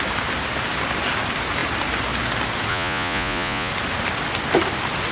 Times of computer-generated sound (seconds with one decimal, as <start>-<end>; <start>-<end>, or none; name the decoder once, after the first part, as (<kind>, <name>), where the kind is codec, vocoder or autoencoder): 2.7-3.7 (vocoder, Vocos)